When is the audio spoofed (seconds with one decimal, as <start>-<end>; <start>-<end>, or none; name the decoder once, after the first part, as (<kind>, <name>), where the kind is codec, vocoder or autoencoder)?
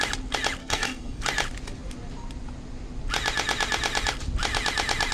0.6-1.2 (codec, SNAC)